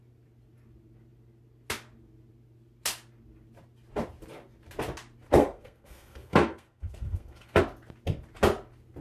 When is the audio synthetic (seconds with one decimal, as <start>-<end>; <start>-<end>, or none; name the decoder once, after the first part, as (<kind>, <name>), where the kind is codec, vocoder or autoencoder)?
5.4-7.6 (codec, SNAC)